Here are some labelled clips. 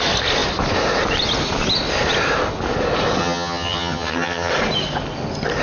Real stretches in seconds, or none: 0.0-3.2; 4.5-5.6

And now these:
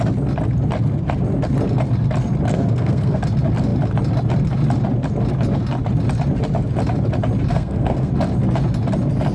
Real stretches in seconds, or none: 0.0-2.5; 3.2-7.5; 8.1-9.3

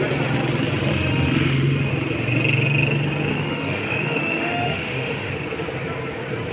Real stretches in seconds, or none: 0.0-0.8; 1.9-3.3; 5.3-6.5

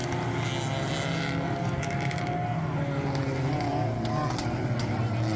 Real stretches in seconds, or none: 0.0-5.4

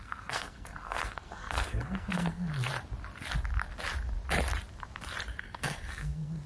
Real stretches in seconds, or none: 2.5-5.4

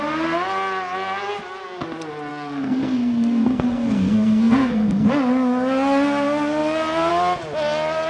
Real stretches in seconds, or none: 0.0-2.3; 5.1-8.1

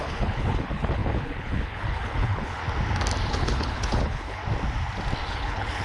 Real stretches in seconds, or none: 2.6-3.3; 4.4-5.3

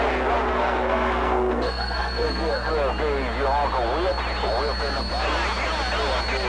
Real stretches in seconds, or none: 0.0-0.5; 2.7-6.5